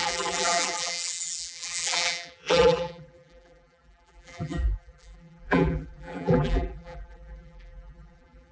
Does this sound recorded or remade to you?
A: remade